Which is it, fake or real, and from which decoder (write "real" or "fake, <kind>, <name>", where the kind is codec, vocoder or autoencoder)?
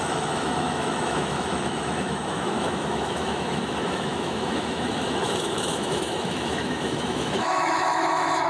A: fake, autoencoder, DAC-VAE